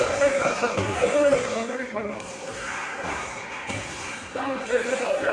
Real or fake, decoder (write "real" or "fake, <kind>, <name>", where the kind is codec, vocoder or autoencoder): fake, codec, SNAC